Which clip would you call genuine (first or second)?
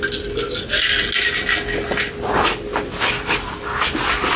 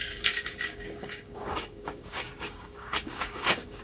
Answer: first